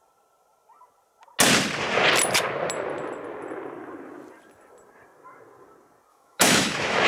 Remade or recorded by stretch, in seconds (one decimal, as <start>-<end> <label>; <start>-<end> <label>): 0.0-6.1 recorded; 6.1-7.1 remade